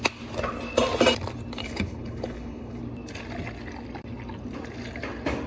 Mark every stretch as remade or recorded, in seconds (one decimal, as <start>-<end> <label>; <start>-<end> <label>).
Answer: 0.0-1.6 recorded; 1.6-2.8 remade; 2.8-5.5 recorded